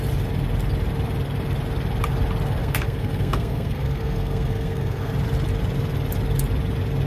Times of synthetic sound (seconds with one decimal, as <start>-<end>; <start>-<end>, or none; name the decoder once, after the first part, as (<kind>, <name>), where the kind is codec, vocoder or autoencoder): 2.6-5.1 (codec, SNAC)